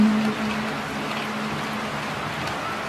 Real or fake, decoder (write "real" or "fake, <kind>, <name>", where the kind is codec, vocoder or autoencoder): real